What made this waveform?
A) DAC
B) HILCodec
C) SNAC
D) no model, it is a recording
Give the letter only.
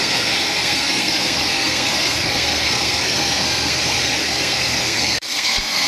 C